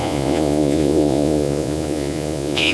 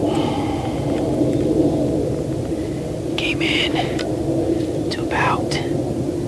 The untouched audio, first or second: second